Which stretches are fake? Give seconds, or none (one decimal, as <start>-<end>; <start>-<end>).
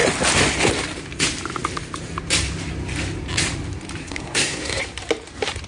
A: 4.0-4.8